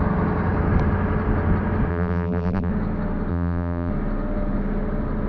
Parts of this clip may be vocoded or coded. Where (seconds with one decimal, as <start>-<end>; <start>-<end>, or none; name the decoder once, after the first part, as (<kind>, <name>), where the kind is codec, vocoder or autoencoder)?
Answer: 1.9-2.7 (vocoder, BigVGAN v2); 3.3-3.9